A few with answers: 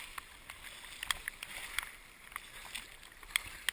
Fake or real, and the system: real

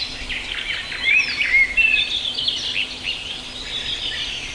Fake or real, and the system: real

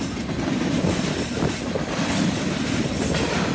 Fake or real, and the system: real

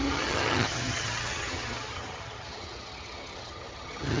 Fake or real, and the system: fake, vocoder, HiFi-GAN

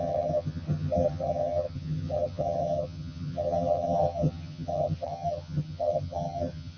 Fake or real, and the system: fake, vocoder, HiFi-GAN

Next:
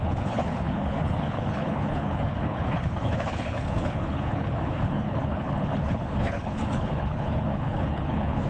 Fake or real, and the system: fake, codec, HILCodec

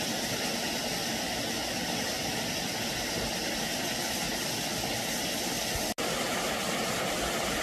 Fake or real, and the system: real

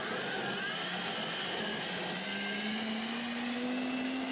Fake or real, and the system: real